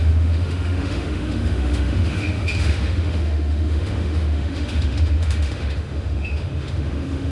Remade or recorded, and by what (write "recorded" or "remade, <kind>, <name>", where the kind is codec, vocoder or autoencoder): remade, autoencoder, DAC-VAE